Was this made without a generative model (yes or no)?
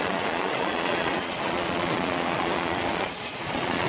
no